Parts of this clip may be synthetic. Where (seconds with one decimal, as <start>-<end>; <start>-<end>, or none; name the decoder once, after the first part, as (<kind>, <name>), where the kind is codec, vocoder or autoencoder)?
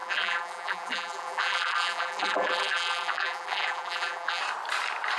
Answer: 0.0-4.4 (vocoder, BigVGAN v2)